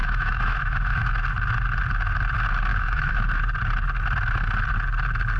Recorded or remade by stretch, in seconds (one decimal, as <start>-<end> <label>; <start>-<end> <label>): 0.0-1.1 remade; 1.1-2.7 recorded; 2.7-3.2 remade; 3.2-5.4 recorded